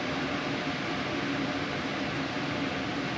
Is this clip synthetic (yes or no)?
no